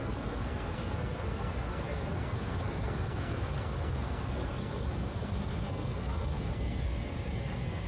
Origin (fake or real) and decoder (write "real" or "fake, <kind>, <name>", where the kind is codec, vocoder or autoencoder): fake, codec, SNAC